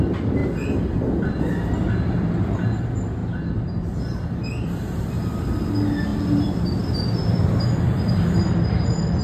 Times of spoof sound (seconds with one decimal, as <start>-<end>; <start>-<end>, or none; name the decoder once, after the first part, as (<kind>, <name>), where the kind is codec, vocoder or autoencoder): 3.2-5.1 (vocoder, BigVGAN v2)